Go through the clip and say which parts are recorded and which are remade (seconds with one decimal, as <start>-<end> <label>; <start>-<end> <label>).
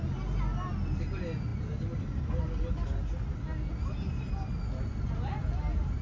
0.0-6.0 recorded